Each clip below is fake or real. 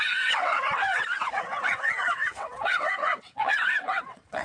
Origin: fake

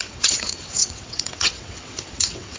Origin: fake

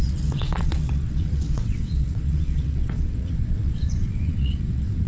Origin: fake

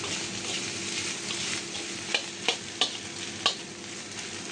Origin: real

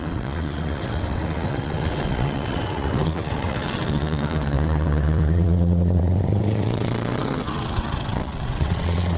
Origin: fake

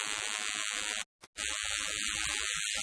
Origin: real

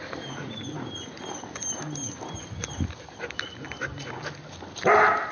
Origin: real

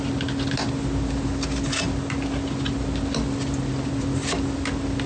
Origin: real